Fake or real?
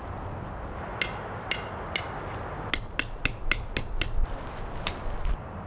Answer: real